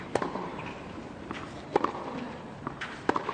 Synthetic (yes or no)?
yes